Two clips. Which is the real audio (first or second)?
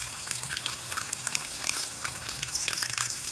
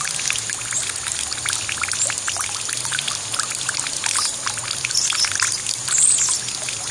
second